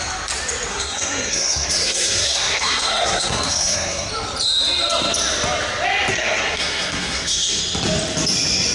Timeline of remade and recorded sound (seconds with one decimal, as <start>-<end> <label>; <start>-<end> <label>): 0.0-0.7 recorded; 0.7-4.1 remade; 4.1-6.1 recorded; 6.1-7.6 remade; 7.6-8.7 recorded